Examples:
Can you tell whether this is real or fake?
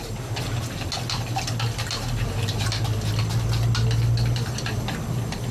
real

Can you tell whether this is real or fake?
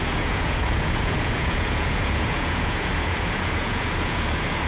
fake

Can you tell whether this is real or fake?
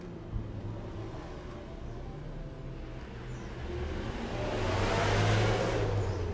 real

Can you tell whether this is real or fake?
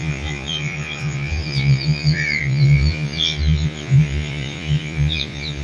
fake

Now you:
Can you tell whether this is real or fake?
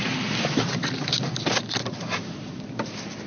real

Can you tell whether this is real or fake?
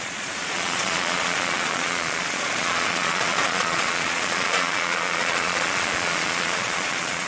fake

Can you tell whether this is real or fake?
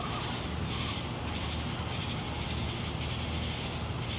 real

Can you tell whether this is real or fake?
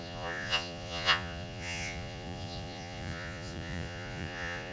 fake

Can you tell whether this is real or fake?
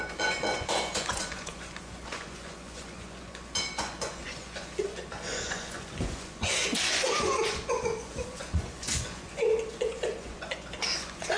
fake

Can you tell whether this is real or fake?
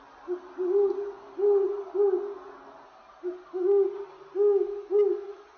real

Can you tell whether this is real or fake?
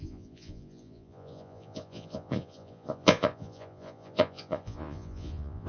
fake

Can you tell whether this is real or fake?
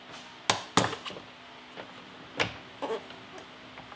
real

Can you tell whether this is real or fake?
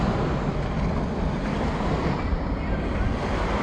real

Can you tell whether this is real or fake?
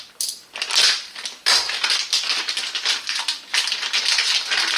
real